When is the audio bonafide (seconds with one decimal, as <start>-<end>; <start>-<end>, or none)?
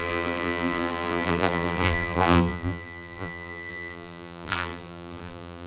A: none